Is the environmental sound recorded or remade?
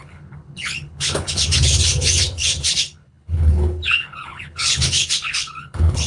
remade